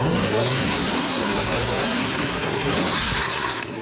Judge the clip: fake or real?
fake